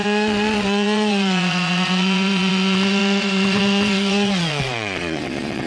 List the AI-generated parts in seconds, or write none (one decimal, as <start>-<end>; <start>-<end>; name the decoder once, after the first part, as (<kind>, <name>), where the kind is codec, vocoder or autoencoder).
0.0-5.7 (vocoder, Vocos)